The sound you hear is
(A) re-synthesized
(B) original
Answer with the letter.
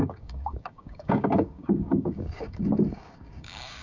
A